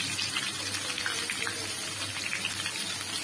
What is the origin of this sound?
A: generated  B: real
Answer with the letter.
B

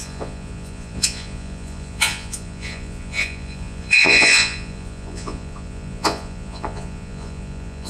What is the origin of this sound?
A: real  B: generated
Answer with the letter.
B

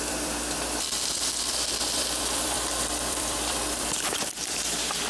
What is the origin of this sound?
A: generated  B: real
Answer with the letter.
A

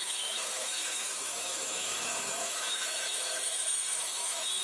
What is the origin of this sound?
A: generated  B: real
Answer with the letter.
A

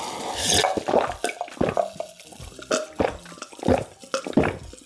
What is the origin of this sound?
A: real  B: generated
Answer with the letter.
A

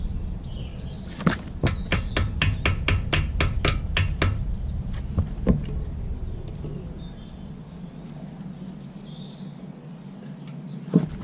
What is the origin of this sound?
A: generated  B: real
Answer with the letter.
B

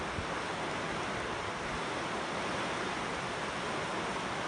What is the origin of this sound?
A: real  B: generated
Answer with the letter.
B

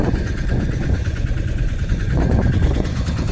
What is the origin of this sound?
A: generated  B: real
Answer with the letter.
A